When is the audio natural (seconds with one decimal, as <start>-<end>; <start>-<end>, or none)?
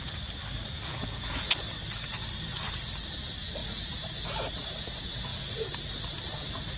0.0-0.9; 1.5-6.8